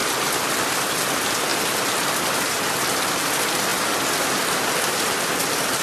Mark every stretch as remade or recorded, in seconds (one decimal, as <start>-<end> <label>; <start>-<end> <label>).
0.0-5.8 recorded